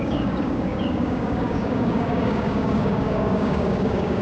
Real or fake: fake